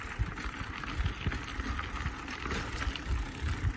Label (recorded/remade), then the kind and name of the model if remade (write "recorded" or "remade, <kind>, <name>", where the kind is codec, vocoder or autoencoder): recorded